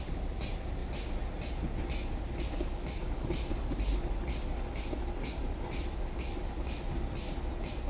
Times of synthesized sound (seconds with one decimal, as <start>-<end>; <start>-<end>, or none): none